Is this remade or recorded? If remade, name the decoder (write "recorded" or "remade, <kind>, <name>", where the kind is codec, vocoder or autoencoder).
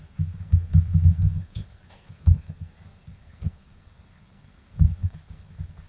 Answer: remade, codec, SNAC